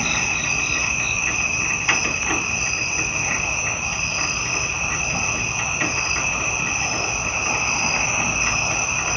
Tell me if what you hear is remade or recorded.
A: recorded